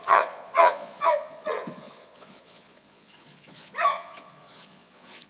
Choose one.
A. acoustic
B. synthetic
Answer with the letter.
B